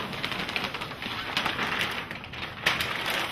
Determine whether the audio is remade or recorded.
recorded